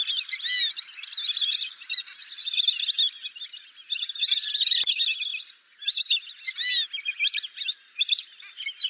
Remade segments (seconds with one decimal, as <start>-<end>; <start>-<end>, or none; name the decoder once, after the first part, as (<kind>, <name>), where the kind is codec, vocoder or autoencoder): none